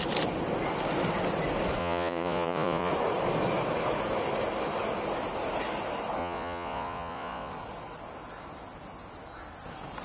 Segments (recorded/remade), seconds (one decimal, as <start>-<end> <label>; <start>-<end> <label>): 0.0-1.8 recorded; 1.8-2.9 remade; 2.9-6.2 recorded; 6.2-7.5 remade; 7.5-10.0 recorded